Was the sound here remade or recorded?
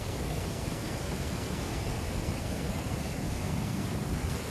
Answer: remade